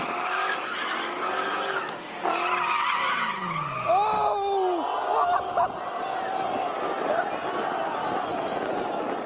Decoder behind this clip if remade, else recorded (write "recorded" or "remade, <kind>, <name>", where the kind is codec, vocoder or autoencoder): recorded